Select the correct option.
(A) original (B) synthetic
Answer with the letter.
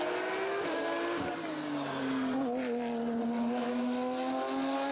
A